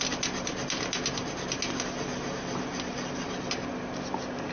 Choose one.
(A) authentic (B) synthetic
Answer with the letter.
A